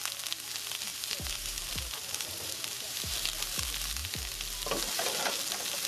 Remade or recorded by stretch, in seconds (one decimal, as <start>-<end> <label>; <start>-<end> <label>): 0.0-0.9 recorded; 0.9-3.1 remade; 3.1-5.9 recorded